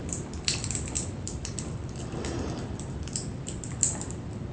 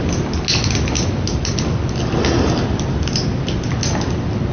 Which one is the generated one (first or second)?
first